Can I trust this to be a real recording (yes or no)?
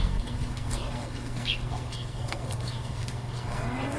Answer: no